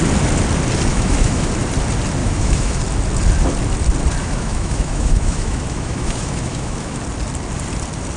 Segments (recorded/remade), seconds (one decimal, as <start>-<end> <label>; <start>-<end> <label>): 0.0-0.9 recorded; 0.9-1.5 remade; 1.5-2.2 recorded; 2.2-2.8 remade; 2.8-4.2 recorded; 4.2-7.0 remade; 7.0-8.2 recorded